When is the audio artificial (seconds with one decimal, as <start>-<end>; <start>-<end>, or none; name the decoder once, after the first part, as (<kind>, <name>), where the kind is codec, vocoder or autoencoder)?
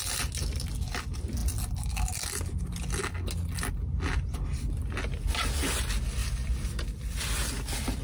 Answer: 6.2-7.2 (vocoder, BigVGAN v2)